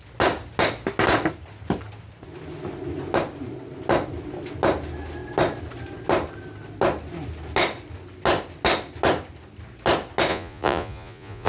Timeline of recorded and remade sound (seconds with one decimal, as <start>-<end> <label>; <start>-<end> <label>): 0.0-10.3 recorded; 10.3-11.5 remade